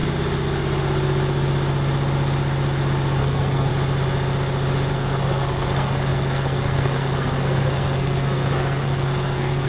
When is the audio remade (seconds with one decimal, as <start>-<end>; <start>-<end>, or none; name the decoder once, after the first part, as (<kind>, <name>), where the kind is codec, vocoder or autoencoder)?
3.2-3.7 (codec, SNAC); 4.9-9.7